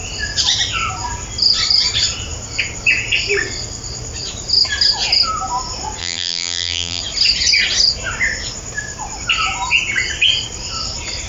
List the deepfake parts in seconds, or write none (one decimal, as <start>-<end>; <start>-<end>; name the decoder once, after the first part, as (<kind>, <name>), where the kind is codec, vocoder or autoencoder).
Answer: 6.0-7.0 (vocoder, BigVGAN v2)